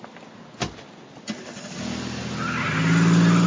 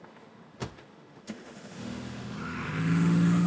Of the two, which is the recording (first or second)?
first